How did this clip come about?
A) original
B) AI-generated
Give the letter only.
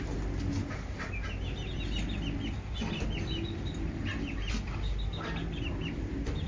A